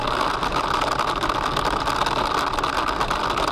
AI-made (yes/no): no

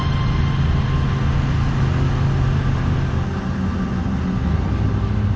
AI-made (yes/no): no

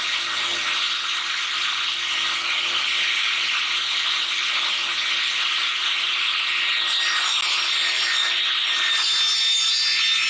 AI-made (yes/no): no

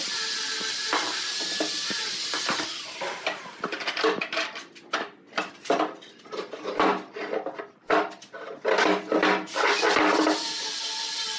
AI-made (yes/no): no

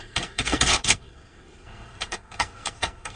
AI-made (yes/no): yes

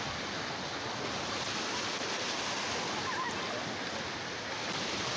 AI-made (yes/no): no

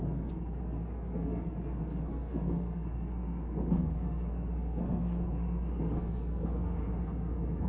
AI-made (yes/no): yes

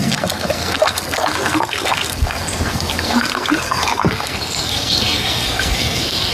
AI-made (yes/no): yes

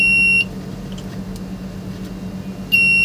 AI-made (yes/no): no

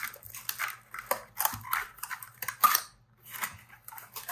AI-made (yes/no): no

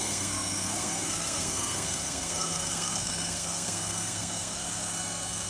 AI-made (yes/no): yes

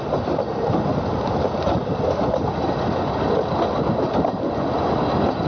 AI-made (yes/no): no